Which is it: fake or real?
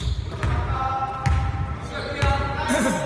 real